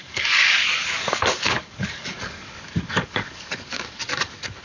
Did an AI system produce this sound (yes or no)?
yes